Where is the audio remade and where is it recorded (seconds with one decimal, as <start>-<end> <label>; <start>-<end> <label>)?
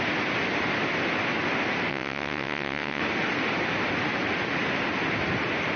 0.0-1.9 recorded; 1.9-3.0 remade; 3.0-5.8 recorded